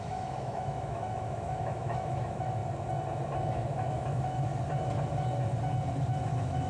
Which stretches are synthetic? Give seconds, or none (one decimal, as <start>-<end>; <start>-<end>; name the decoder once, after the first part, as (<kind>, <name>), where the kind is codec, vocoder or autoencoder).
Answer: 0.0-2.6 (autoencoder, DAC-VAE); 3.5-4.5; 6.2-6.7